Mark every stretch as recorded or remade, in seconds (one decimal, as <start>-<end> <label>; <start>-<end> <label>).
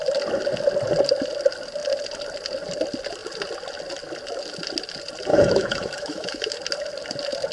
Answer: 0.0-5.3 recorded; 5.3-6.5 remade; 6.5-7.5 recorded